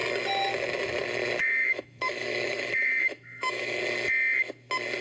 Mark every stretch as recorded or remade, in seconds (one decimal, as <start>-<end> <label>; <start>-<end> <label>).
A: 0.0-1.4 recorded; 1.4-3.8 remade; 3.8-5.0 recorded